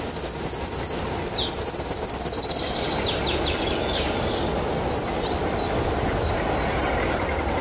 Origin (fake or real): real